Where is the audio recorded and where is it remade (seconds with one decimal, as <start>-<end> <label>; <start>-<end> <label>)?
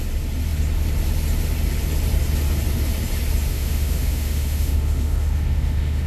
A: 0.0-3.5 recorded; 3.5-6.1 remade